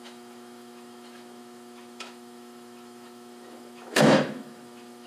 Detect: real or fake fake